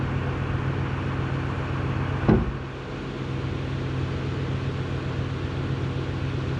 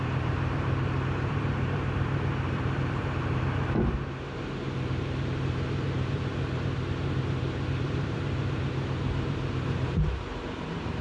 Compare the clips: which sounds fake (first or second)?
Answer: second